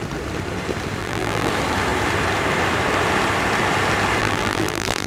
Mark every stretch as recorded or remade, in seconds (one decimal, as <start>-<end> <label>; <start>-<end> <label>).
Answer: 0.0-1.0 recorded; 1.0-1.5 remade; 1.5-4.2 recorded; 4.2-5.1 remade